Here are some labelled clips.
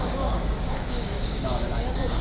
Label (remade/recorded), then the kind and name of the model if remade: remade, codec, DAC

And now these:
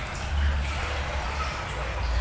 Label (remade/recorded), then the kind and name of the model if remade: recorded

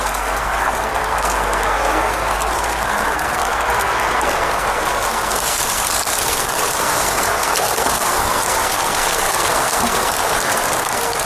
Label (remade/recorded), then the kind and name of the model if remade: remade, codec, SNAC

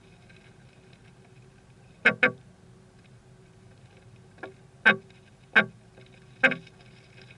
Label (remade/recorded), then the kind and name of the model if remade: recorded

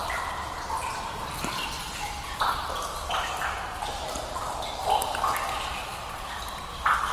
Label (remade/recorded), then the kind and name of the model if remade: recorded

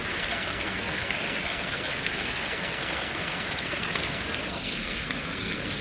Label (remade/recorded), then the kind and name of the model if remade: remade, codec, SNAC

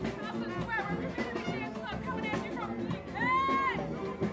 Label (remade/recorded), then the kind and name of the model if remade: recorded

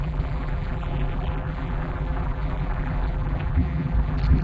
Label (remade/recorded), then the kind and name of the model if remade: remade, vocoder, BigVGAN v2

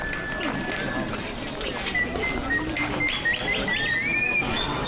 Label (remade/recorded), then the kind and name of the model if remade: recorded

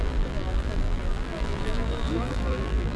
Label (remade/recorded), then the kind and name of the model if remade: remade, vocoder, BigVGAN v2